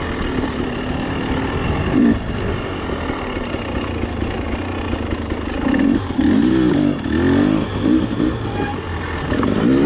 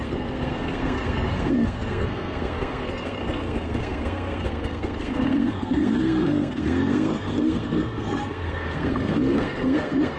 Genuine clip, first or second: first